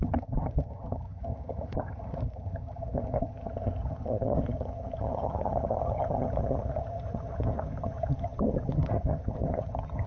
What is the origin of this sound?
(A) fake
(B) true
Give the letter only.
A